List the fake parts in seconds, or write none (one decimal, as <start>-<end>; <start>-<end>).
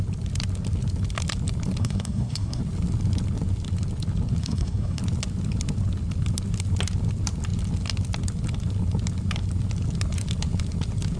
1.8-2.6; 4.4-5.0